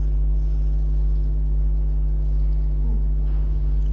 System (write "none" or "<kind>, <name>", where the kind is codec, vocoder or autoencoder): none